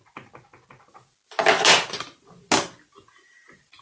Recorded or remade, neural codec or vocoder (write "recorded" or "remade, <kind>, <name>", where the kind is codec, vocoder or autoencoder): recorded